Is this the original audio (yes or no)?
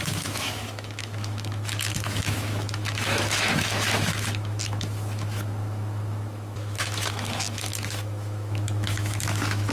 no